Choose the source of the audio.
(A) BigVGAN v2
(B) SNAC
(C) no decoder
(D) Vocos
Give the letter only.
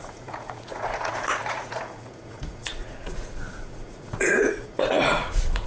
D